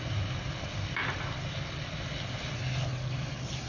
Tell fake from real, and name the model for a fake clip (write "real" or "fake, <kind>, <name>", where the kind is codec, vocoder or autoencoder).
real